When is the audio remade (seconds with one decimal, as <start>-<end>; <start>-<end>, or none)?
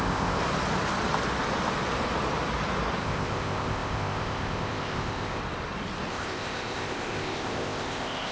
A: 0.0-0.4; 3.0-5.4; 6.1-8.3